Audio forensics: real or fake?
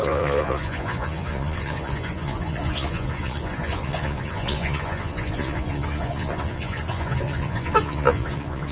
fake